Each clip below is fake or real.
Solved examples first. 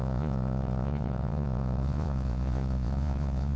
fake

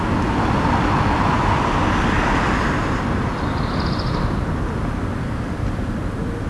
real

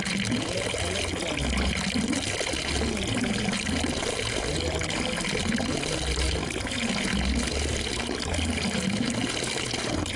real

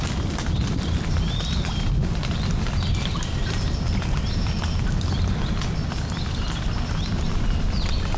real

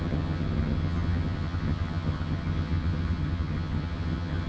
fake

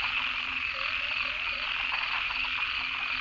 real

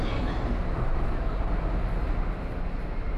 real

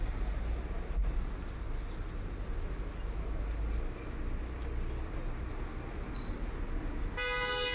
real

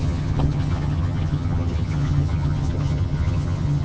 fake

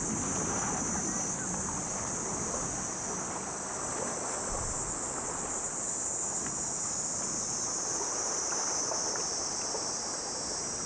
real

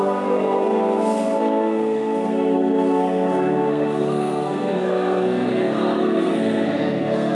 fake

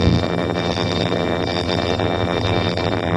fake